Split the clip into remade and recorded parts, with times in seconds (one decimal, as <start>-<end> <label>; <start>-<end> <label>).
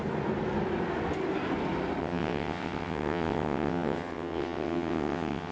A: 0.0-2.0 recorded; 2.0-5.5 remade